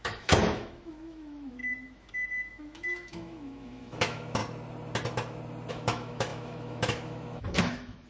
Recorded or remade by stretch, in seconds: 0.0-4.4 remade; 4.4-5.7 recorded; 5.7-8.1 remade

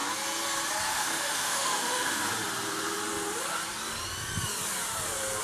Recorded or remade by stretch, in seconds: 0.0-0.9 recorded; 0.9-2.2 remade; 2.2-5.4 recorded